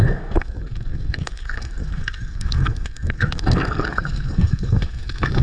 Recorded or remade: remade